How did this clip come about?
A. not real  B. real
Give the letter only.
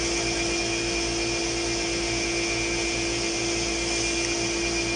B